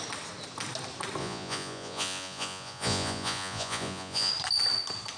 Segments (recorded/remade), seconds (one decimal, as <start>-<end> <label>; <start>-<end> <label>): 0.0-1.2 recorded; 1.2-4.3 remade; 4.3-5.2 recorded